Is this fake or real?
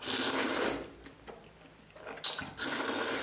real